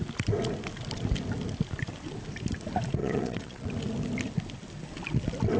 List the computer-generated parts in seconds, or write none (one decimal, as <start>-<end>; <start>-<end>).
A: 3.0-3.7